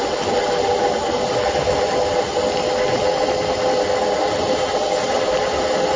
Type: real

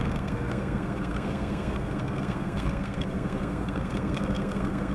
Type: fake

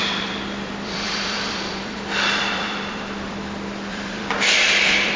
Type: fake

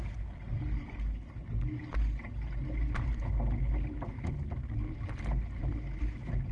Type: real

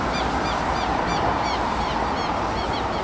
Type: real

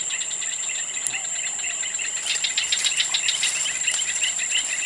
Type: real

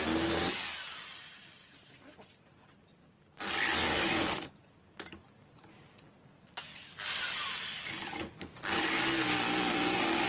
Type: real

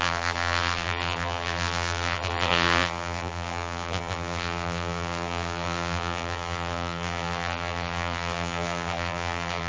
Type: fake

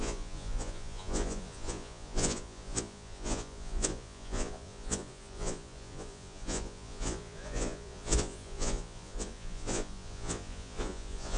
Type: fake